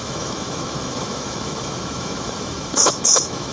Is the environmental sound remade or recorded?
remade